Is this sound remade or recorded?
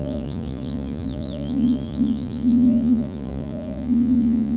remade